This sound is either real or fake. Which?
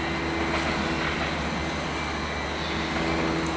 real